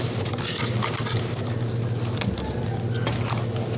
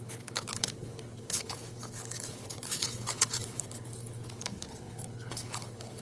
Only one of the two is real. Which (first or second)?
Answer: first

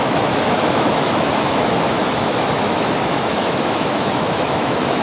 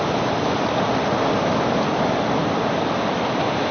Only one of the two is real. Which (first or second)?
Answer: second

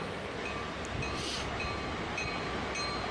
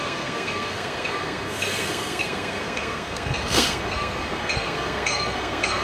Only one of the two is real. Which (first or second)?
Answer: first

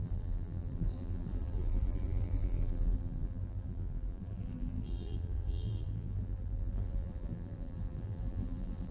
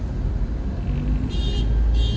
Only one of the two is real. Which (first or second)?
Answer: second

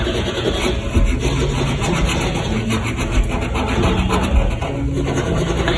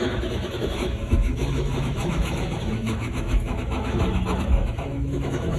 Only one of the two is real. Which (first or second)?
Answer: first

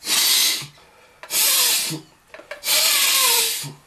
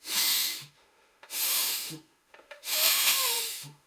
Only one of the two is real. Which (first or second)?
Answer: first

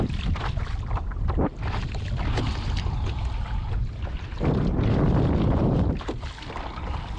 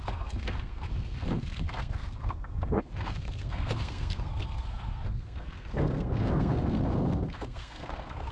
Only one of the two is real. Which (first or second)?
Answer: first